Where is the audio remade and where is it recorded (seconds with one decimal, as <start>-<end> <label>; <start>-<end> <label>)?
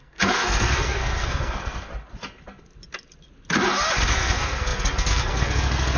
0.0-1.9 remade; 1.9-4.1 recorded; 4.1-6.0 remade